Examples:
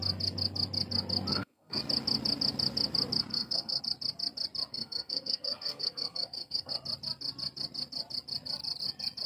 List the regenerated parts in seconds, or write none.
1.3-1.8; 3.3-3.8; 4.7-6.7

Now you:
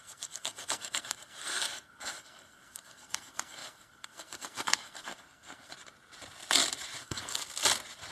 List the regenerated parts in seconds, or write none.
0.0-5.7; 7.0-7.4